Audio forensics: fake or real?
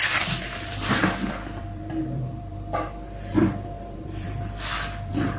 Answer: fake